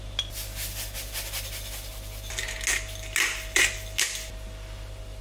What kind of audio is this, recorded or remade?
recorded